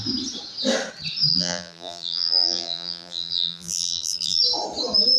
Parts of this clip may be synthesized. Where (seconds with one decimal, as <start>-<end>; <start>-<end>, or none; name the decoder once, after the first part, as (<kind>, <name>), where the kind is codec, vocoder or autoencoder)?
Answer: 1.3-4.4 (vocoder, BigVGAN v2)

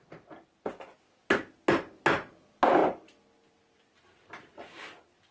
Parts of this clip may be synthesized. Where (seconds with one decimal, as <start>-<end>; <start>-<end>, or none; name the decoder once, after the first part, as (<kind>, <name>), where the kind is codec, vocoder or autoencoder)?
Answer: none

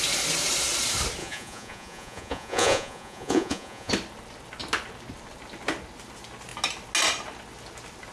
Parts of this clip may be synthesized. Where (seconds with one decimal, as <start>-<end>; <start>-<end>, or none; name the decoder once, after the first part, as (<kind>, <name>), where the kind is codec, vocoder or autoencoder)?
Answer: 1.2-3.9 (vocoder, Vocos)

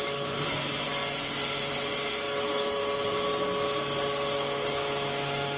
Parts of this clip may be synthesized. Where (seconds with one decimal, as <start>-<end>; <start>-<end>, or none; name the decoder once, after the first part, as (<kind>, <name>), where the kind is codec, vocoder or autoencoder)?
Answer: 0.0-0.9 (autoencoder, DAC-VAE); 2.1-2.8; 4.7-5.6

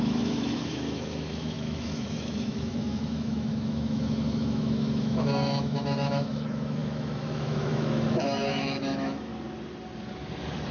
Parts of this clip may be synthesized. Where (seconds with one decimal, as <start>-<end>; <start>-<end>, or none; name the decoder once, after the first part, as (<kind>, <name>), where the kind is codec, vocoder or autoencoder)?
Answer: 0.0-9.3 (autoencoder, DAC-VAE)